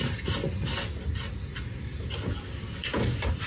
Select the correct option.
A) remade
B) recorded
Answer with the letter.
B